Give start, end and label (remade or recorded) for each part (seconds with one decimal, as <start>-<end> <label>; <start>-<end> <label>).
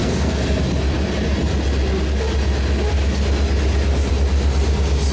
0.0-0.6 remade; 0.6-5.1 recorded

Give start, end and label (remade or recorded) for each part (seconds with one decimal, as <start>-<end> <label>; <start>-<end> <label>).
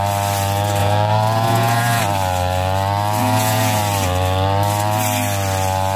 0.0-0.8 recorded; 0.8-2.0 remade; 2.0-3.2 recorded; 3.2-3.8 remade; 3.8-6.0 recorded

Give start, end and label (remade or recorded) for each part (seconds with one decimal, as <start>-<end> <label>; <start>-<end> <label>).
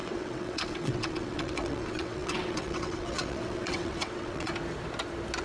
0.0-4.5 remade; 4.5-5.4 recorded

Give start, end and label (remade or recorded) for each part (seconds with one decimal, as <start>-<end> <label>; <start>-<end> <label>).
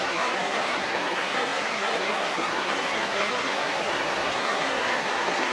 0.0-5.5 remade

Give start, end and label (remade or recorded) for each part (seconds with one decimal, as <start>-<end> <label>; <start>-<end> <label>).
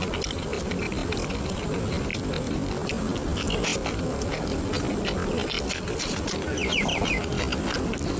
0.0-8.2 recorded